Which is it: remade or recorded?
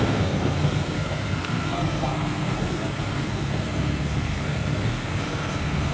remade